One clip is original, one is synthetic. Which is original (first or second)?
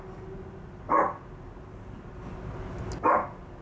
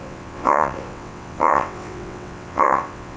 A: first